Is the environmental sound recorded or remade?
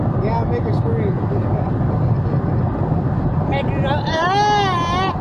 recorded